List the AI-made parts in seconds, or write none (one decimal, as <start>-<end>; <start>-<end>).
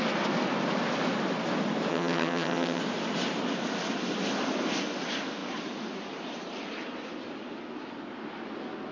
1.9-2.8